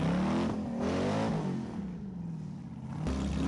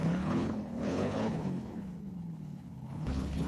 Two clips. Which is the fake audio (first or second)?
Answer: second